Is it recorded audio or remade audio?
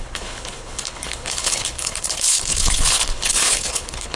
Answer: remade